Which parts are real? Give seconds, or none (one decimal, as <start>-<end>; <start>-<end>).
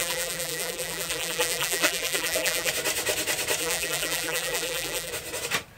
2.7-3.6; 5.1-5.8